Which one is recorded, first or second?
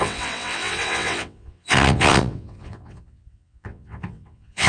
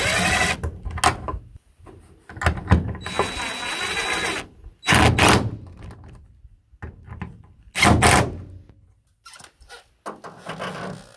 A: second